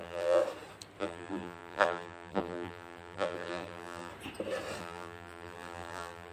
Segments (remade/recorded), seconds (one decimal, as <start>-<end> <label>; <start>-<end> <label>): 0.0-0.4 remade; 0.4-1.0 recorded; 1.0-4.1 remade; 4.1-4.8 recorded; 4.8-6.3 remade